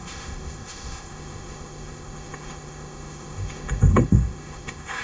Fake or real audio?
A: fake